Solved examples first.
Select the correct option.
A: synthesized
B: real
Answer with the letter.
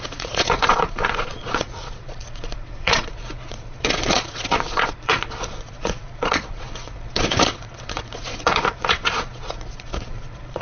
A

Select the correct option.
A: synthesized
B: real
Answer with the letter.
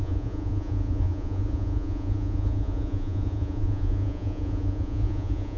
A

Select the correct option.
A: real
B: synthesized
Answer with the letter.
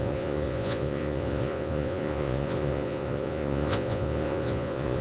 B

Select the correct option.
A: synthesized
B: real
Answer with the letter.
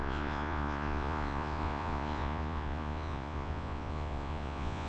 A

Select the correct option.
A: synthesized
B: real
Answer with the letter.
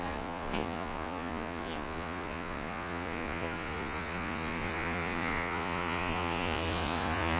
A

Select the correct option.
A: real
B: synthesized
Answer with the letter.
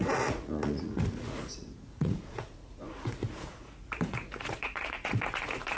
B